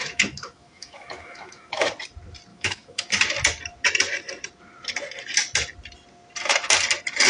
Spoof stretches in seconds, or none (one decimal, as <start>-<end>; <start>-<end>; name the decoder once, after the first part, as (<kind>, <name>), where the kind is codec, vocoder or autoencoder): 0.0-1.9 (autoencoder, DAC-VAE); 2.5-3.1